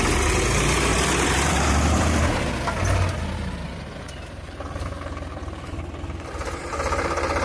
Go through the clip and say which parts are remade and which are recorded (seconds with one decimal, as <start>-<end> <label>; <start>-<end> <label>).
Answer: 0.0-0.9 recorded; 0.9-2.2 remade; 2.2-7.4 recorded